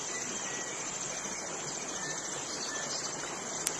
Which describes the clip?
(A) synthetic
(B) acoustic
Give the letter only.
B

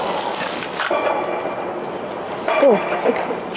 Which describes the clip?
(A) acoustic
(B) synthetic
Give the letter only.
A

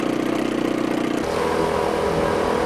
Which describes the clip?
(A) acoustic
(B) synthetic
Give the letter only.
A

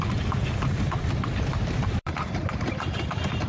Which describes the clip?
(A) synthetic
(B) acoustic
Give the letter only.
A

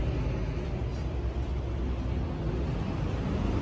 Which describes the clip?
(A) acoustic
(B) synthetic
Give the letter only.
A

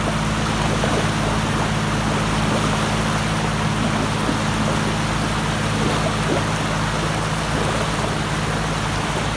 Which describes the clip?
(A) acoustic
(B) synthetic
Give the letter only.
A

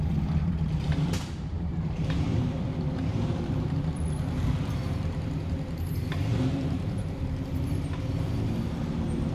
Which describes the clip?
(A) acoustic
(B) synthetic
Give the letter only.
B